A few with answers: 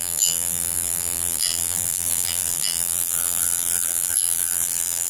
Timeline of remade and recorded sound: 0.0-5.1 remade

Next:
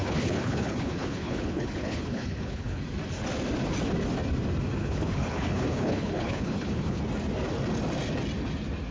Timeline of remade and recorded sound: 0.0-2.8 remade; 2.8-4.8 recorded; 4.8-7.0 remade; 7.0-8.9 recorded

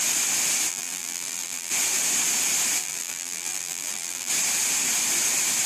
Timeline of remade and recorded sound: 0.0-0.7 recorded; 0.7-1.7 remade; 1.7-2.8 recorded; 2.8-4.3 remade; 4.3-5.7 recorded

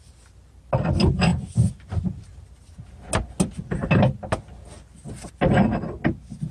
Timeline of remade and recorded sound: 0.0-6.5 recorded

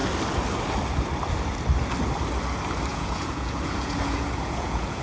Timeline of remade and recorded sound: 0.0-2.9 recorded; 2.9-5.0 remade